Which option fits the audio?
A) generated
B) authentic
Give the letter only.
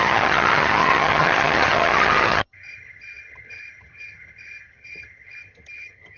A